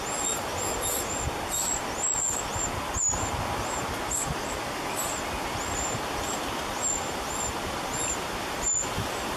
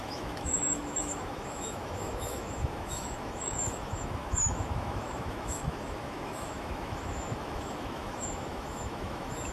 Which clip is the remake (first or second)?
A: second